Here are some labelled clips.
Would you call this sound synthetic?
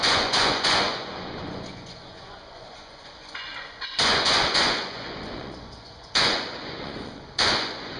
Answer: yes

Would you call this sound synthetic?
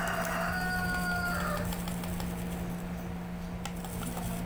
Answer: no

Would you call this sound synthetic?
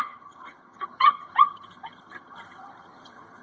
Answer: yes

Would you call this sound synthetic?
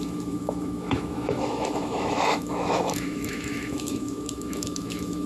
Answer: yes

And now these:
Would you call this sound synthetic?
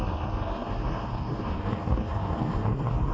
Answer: yes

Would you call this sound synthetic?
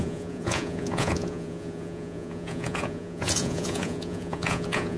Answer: yes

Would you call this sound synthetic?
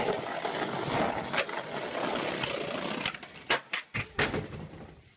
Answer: no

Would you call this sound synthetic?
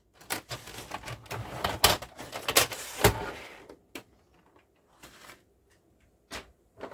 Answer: no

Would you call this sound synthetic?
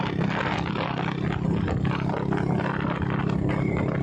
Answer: no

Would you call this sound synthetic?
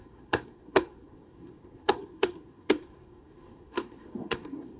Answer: yes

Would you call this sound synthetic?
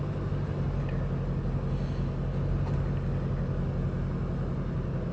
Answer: no